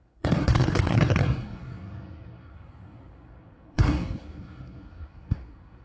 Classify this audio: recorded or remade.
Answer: remade